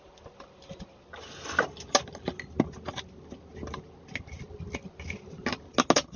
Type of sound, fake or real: real